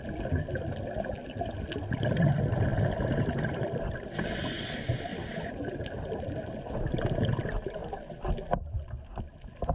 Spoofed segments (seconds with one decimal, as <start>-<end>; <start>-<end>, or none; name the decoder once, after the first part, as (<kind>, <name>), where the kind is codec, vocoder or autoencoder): none